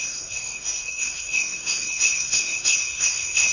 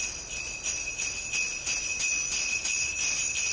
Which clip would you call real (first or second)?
second